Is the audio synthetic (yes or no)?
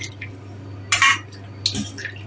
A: no